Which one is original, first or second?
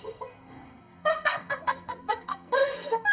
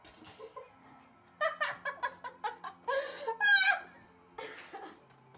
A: second